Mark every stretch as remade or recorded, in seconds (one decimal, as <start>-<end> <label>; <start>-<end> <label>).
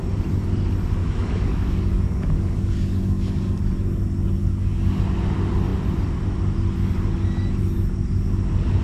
0.0-1.0 recorded; 1.0-3.6 remade; 3.6-4.4 recorded; 4.4-5.0 remade; 5.0-8.8 recorded